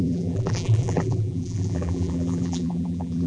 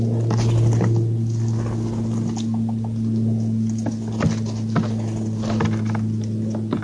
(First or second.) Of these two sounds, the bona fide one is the second